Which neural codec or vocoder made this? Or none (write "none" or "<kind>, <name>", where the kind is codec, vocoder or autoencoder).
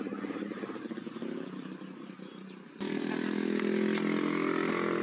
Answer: none